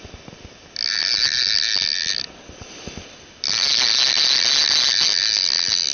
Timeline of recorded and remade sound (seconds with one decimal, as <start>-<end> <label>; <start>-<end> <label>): 0.0-5.9 recorded